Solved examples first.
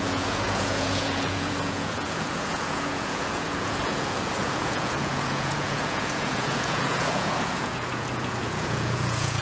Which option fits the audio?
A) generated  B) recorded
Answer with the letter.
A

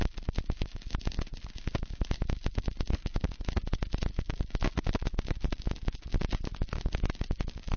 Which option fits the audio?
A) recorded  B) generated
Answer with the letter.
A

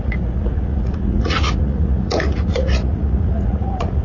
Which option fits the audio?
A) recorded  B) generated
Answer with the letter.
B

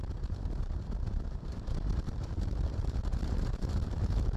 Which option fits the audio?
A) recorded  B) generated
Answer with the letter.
B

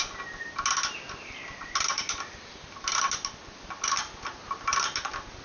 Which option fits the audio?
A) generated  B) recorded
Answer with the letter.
B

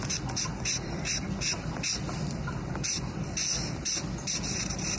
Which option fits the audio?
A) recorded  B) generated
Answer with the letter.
B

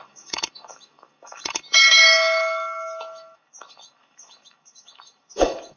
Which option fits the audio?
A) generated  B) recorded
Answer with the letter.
A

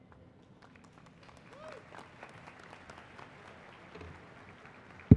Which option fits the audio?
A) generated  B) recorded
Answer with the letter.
B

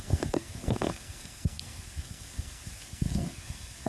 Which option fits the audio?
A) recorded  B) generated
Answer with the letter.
B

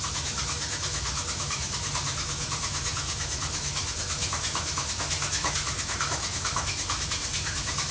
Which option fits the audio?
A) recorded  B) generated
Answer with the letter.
B